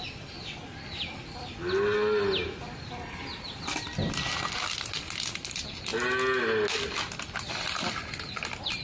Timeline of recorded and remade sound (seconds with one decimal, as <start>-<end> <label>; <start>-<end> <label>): 0.0-8.8 recorded